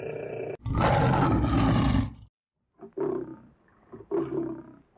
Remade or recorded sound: recorded